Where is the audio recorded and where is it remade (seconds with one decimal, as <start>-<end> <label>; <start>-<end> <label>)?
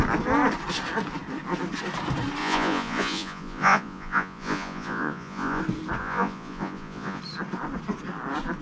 0.0-2.4 recorded; 2.4-5.6 remade; 5.6-6.0 recorded; 6.0-7.2 remade; 7.2-8.6 recorded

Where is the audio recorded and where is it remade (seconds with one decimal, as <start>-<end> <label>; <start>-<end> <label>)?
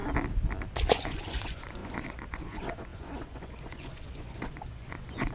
0.0-0.9 recorded; 0.9-5.3 remade